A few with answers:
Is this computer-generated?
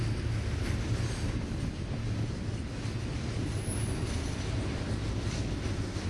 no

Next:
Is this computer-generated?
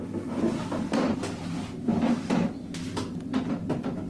yes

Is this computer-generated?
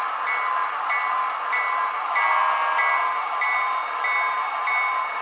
no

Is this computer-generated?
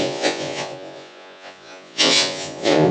yes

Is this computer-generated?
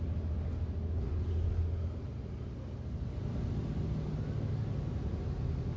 no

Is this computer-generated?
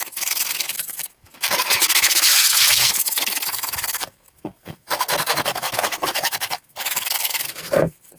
yes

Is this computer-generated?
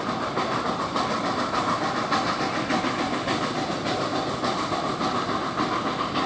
no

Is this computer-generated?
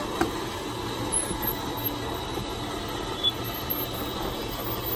no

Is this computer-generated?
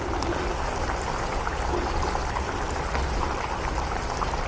yes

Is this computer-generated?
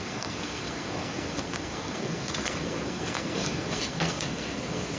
yes